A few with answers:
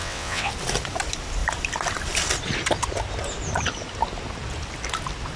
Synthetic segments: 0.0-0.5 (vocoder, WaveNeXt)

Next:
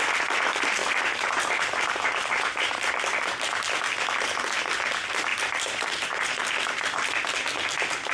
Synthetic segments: 0.8-2.9 (vocoder, BigVGAN v2); 5.3-6.5

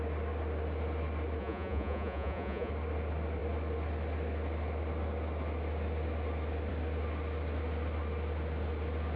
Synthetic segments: 1.4-2.7 (vocoder, Vocos)

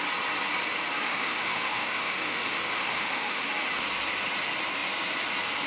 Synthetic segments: 1.0-3.5 (autoencoder, DAC-VAE)